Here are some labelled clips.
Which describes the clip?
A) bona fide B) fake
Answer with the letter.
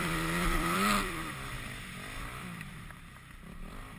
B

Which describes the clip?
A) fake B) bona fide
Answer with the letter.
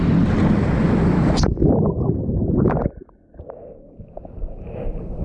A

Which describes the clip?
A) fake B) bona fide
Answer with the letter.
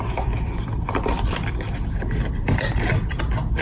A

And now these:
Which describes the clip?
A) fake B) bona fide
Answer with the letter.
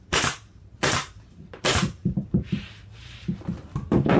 A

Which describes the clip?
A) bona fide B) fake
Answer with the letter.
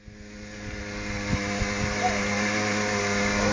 A